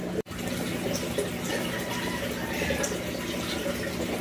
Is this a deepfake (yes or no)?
no